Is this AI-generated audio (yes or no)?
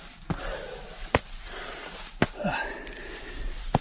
yes